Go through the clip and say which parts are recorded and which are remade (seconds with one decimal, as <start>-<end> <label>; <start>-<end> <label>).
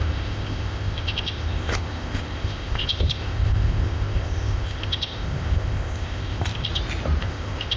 0.0-6.7 remade; 6.7-7.2 recorded; 7.2-7.8 remade